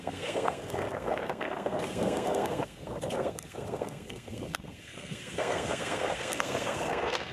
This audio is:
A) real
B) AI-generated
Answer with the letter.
B